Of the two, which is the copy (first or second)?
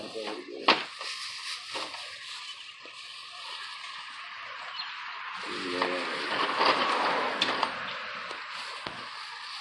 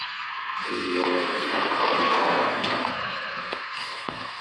second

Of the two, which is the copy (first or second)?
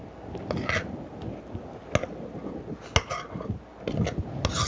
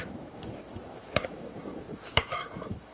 second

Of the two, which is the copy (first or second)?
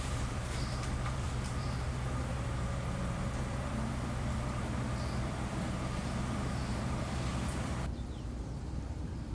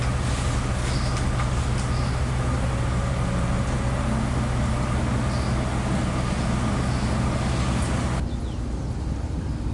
first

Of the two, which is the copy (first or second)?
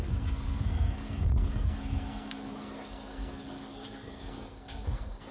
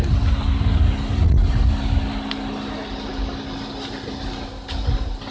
first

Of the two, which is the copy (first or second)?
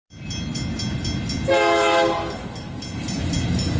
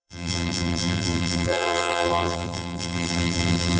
second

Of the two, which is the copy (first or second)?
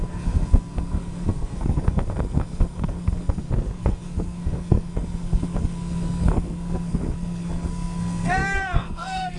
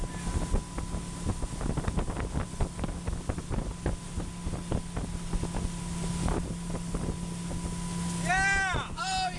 first